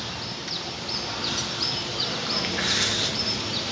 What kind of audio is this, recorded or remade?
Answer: recorded